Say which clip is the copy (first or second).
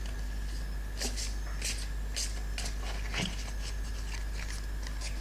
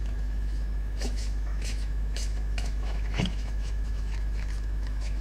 second